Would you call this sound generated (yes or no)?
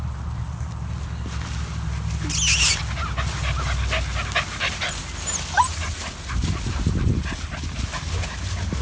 no